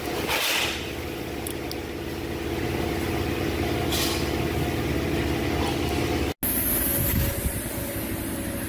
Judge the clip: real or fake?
real